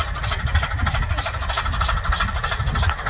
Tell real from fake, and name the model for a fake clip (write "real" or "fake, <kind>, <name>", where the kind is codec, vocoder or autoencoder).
real